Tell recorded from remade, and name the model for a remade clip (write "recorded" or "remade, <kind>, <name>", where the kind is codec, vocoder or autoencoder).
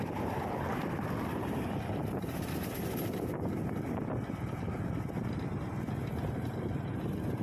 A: recorded